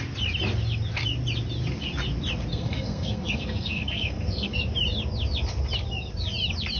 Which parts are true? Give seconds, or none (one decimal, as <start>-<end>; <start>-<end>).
0.0-2.5; 4.6-6.8